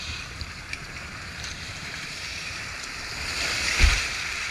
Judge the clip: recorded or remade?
remade